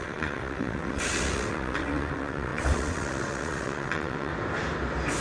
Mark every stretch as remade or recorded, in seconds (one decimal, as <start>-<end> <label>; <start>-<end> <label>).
0.0-4.3 remade; 4.3-5.2 recorded